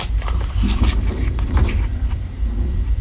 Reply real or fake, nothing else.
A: real